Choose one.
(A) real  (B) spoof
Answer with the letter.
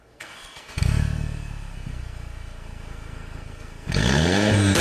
B